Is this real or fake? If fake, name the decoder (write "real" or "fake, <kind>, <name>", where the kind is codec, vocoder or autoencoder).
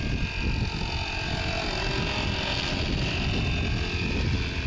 real